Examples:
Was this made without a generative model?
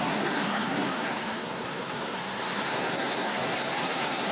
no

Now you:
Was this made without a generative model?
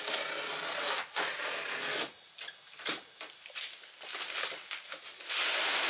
yes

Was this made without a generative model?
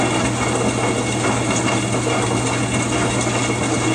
yes